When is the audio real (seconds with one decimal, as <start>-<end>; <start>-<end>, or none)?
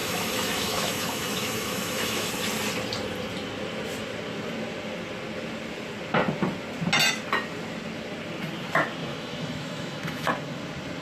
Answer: 2.3-9.0; 10.3-11.0